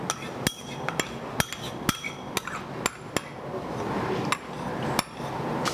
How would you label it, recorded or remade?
recorded